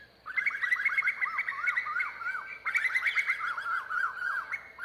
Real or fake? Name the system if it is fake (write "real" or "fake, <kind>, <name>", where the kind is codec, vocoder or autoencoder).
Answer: real